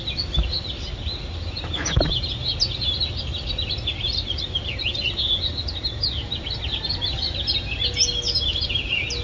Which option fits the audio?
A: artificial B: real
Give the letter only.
B